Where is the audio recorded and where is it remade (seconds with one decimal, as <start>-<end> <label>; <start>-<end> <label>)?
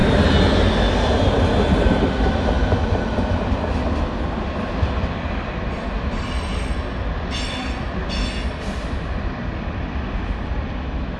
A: 0.0-11.2 recorded